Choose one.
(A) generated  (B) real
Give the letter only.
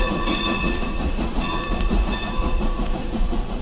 A